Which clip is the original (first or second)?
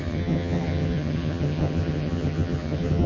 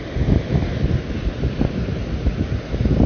second